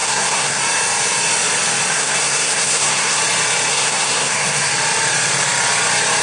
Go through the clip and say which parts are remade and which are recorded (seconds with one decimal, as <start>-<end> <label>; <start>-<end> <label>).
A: 0.0-0.6 remade; 0.6-1.9 recorded; 1.9-3.2 remade; 3.2-3.7 recorded; 3.7-4.7 remade; 4.7-6.2 recorded